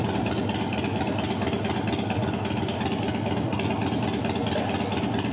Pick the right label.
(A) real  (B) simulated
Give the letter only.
A